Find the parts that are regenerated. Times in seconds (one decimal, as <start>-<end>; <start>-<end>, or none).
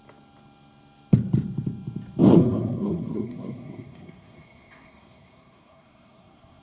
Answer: 2.3-6.6